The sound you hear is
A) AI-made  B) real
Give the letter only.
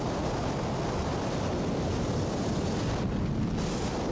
B